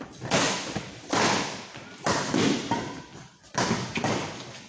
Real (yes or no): yes